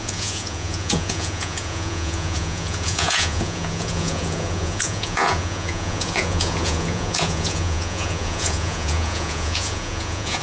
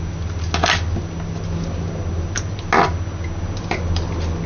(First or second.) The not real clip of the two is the first